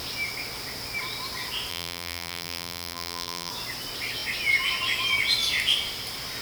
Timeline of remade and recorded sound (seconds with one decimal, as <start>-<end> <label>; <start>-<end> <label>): 0.0-1.7 recorded; 1.7-3.5 remade; 3.5-6.4 recorded